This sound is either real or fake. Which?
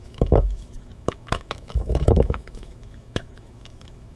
fake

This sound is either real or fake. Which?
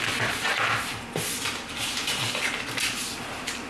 real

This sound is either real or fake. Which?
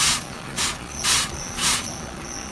fake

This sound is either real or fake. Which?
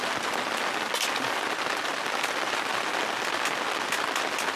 real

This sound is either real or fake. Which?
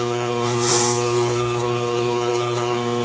fake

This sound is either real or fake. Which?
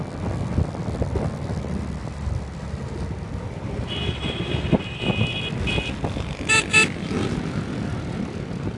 real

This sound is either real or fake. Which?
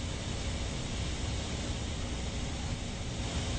real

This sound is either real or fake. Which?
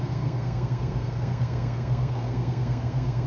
fake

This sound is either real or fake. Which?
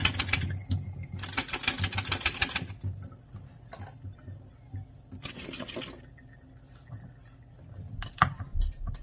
real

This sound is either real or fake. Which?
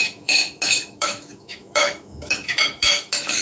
fake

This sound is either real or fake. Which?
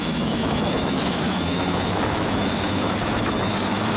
fake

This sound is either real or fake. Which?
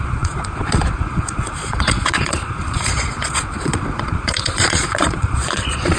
fake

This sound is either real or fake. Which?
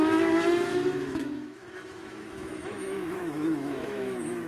fake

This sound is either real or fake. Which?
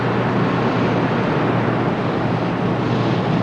real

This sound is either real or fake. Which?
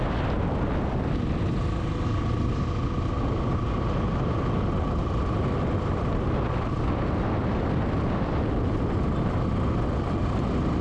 real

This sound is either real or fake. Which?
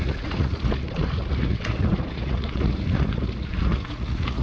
fake